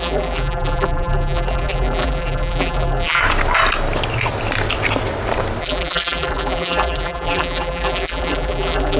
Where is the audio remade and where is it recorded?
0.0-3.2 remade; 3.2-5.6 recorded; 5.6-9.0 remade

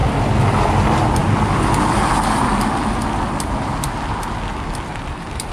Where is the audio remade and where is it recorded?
0.0-5.5 recorded

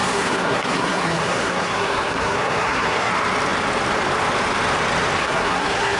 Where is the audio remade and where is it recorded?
0.0-3.1 remade; 3.1-5.2 recorded; 5.2-6.0 remade

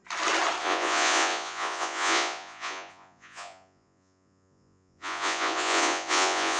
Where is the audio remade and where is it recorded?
0.0-0.6 recorded; 0.6-6.6 remade

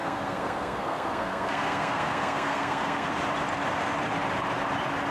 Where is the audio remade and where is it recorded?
0.0-3.1 remade; 3.1-5.1 recorded

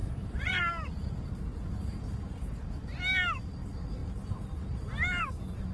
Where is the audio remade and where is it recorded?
0.0-0.6 remade; 0.6-5.7 recorded

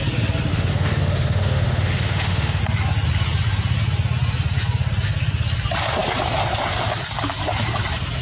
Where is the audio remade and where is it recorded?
0.0-0.5 recorded; 0.5-2.6 remade; 2.6-8.2 recorded